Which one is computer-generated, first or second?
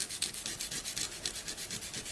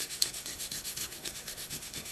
second